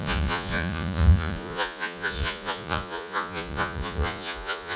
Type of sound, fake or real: fake